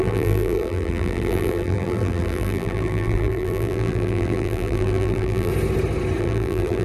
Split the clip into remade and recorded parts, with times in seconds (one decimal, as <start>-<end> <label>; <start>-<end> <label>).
0.0-5.5 remade; 5.5-6.2 recorded; 6.2-6.8 remade